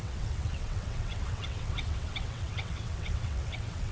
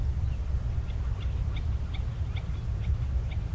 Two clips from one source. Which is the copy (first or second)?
first